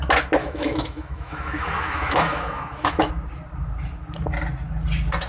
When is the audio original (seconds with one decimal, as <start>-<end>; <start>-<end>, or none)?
0.0-0.4; 3.1-5.3